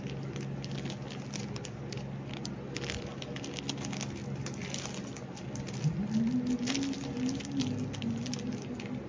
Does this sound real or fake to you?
real